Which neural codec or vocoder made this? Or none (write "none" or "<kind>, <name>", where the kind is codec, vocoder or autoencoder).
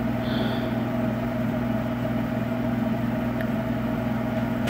none